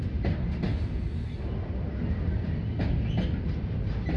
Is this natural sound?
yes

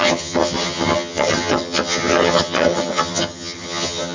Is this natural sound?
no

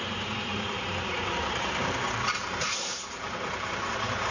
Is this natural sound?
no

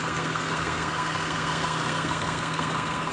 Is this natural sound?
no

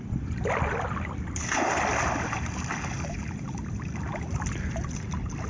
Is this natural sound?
yes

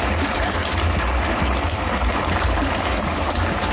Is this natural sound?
no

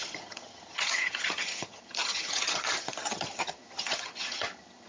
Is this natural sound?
no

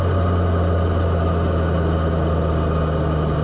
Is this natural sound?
yes